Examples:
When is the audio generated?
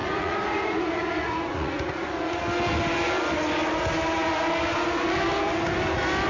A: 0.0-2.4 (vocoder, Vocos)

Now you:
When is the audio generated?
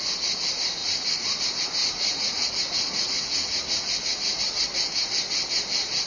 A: 0.8-1.4 (vocoder, Vocos); 1.8-4.4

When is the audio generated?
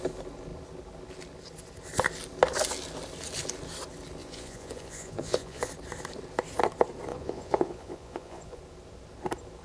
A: 4.2-5.7 (vocoder, Vocos); 7.1-8.6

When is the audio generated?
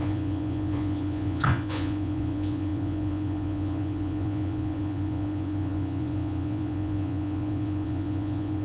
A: 0.0-8.6 (vocoder, Vocos)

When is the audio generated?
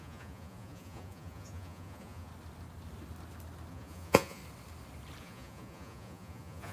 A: 0.0-2.3 (vocoder, Vocos); 3.7-4.4; 5.2-6.7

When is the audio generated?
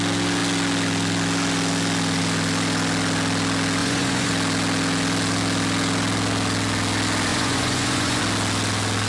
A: 3.8-4.3 (vocoder, Vocos); 7.3-8.2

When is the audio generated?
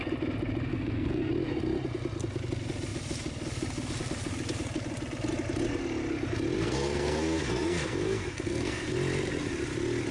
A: 0.7-1.3 (codec, SNAC); 6.6-8.9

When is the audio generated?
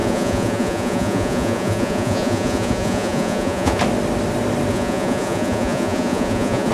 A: 0.0-3.8 (vocoder, Vocos); 4.7-6.7